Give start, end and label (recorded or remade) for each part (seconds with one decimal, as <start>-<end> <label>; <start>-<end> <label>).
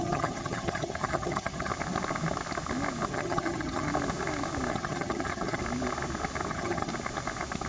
0.0-1.7 remade; 1.7-3.1 recorded; 3.1-3.9 remade; 3.9-4.7 recorded; 4.7-5.6 remade; 5.6-6.5 recorded; 6.5-6.9 remade; 6.9-7.7 recorded